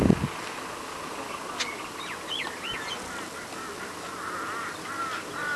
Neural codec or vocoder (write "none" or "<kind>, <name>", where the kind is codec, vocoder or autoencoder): none